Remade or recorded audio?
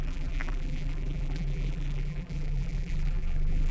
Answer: remade